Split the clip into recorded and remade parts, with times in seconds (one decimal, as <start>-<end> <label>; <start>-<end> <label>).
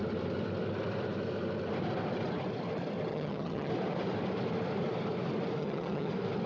0.0-3.1 recorded; 3.1-3.7 remade; 3.7-5.6 recorded; 5.6-6.1 remade; 6.1-6.5 recorded